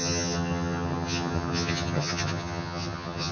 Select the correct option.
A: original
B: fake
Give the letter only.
B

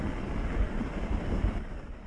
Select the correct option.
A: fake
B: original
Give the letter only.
B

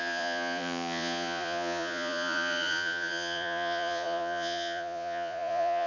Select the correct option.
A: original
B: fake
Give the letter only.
B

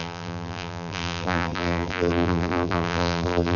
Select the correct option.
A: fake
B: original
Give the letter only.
A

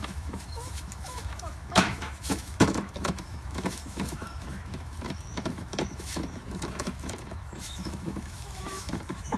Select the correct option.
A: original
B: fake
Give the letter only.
B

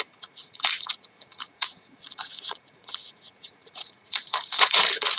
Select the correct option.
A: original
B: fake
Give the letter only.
B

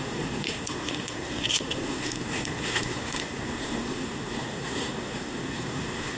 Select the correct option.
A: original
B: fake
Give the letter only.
B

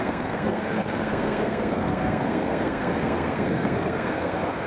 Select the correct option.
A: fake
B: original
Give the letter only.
A